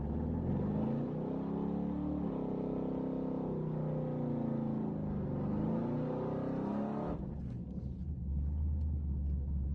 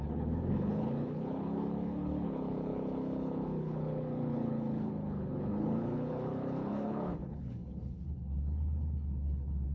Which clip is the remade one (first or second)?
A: second